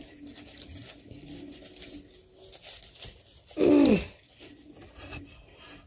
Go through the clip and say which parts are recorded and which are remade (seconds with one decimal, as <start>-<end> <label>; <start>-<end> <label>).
0.0-5.9 recorded